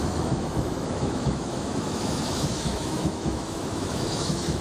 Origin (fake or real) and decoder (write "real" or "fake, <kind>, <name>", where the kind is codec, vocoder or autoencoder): fake, autoencoder, DAC-VAE